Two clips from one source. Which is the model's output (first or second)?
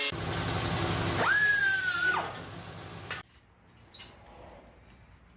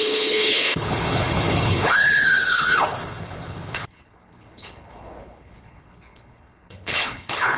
second